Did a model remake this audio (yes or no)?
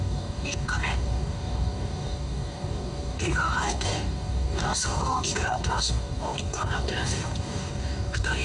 yes